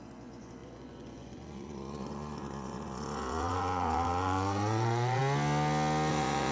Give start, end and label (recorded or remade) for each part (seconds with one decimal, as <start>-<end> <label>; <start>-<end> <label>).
0.0-5.2 remade; 5.2-6.1 recorded; 6.1-6.5 remade